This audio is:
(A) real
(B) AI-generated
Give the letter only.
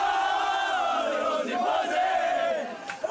A